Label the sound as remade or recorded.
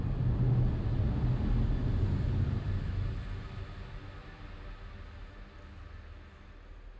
recorded